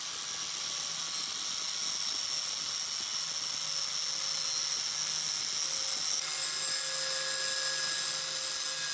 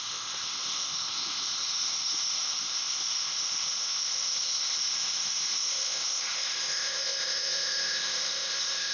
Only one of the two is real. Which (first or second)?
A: first